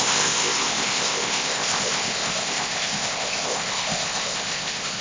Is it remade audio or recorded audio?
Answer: remade